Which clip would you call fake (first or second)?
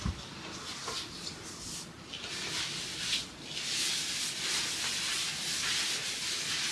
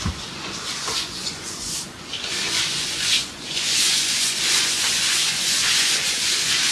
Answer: second